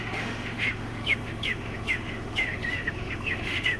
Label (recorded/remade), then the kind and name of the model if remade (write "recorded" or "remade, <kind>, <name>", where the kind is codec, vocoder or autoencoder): remade, autoencoder, DAC-VAE